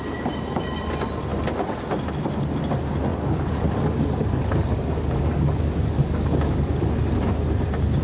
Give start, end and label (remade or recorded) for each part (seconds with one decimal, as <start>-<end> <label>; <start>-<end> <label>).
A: 0.0-3.1 recorded; 3.1-6.9 remade; 6.9-8.0 recorded